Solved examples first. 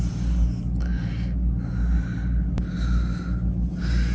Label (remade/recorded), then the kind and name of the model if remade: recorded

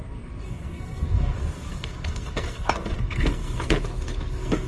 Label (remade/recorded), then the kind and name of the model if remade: remade, codec, SNAC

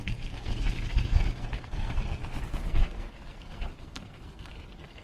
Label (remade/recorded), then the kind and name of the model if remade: remade, codec, SNAC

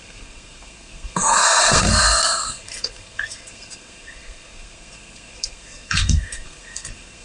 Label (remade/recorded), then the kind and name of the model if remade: remade, codec, SNAC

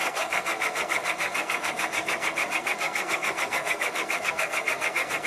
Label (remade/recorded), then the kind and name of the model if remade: remade, codec, SNAC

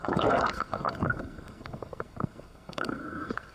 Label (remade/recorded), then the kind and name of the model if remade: remade, codec, SNAC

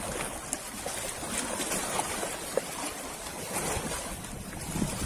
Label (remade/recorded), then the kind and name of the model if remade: recorded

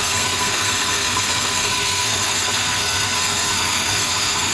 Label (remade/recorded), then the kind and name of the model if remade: remade, codec, SNAC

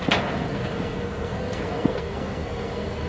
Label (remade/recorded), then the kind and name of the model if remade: remade, codec, SNAC